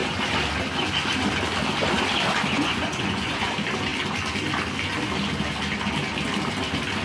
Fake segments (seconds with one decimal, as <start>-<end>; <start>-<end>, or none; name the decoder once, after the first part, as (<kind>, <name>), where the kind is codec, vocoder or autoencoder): 2.5-3.5 (vocoder, Vocos)